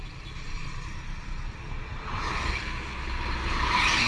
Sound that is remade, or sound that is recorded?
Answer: recorded